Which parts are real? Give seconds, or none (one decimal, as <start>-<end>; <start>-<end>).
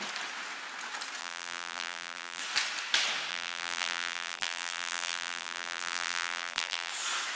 0.0-1.2; 2.4-3.3; 6.9-7.4